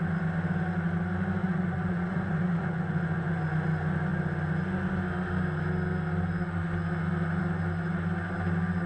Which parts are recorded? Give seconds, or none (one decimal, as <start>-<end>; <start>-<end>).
0.0-1.4; 3.4-8.9